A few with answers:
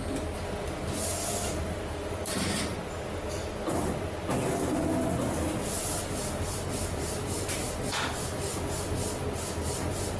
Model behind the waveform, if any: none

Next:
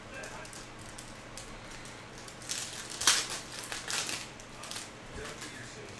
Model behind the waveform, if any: none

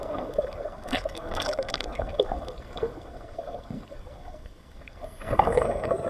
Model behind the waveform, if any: codec, SNAC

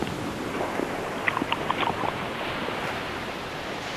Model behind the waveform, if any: none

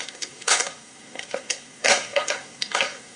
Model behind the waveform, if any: codec, SNAC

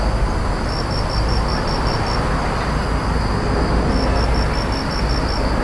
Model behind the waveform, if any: none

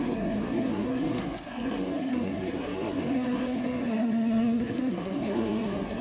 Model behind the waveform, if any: codec, SNAC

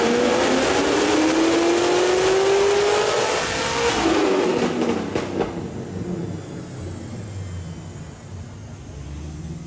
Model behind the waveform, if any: none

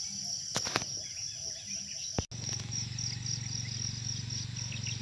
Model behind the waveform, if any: none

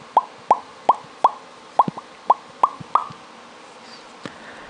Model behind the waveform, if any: none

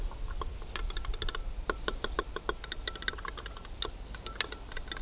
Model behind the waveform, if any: none